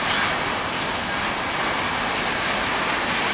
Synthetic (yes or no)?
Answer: no